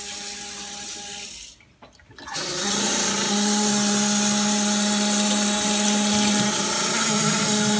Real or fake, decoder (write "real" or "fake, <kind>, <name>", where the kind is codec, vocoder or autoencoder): real